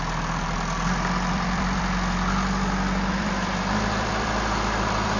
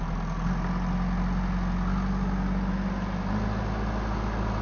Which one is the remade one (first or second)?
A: first